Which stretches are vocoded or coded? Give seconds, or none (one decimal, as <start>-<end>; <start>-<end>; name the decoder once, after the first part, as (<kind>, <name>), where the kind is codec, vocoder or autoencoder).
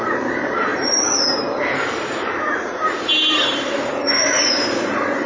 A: 0.0-5.3 (vocoder, BigVGAN v2)